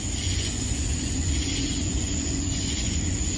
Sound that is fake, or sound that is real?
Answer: fake